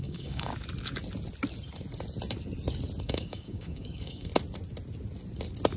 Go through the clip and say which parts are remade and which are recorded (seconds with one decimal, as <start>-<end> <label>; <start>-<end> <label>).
0.0-0.5 remade; 0.5-3.0 recorded; 3.0-4.3 remade; 4.3-5.8 recorded